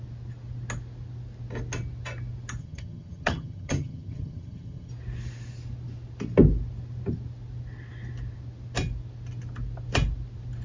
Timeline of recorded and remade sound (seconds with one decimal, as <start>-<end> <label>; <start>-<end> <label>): 0.0-2.6 recorded; 2.6-4.9 remade; 4.9-10.6 recorded